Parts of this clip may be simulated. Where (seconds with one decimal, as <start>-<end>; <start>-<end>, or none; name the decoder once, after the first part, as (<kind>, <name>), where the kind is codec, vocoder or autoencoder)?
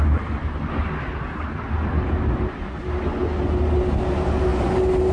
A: none